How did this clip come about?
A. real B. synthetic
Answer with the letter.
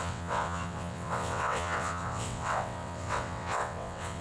B